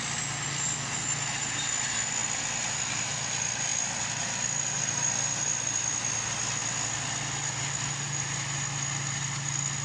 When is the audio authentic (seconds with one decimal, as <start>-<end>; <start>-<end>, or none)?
0.0-9.8